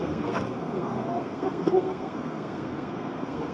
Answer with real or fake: fake